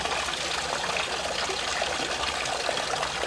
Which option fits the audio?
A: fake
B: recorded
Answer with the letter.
B